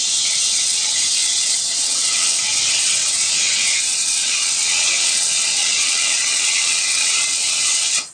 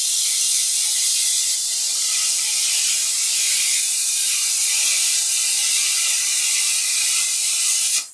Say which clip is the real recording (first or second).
second